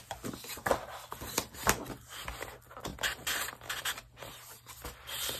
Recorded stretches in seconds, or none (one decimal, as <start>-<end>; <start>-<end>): 0.0-5.4